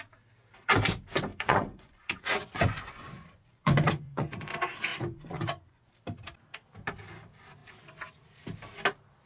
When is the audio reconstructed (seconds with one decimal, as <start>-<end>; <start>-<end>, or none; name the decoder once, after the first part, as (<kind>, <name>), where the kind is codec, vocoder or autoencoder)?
1.3-4.5 (vocoder, Vocos); 4.9-5.9